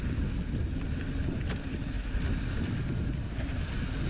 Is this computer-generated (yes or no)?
no